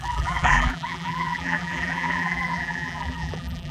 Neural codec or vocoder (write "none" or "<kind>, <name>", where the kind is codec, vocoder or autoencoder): vocoder, BigVGAN v2